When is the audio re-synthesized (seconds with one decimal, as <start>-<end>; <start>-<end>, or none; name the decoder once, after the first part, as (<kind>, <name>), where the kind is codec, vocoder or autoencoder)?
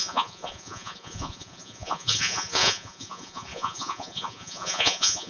0.0-5.3 (vocoder, Vocos)